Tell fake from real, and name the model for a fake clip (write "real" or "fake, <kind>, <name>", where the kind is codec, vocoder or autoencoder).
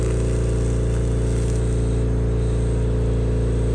real